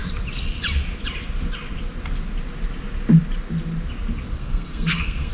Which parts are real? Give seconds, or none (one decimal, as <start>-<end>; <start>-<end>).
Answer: 0.0-4.4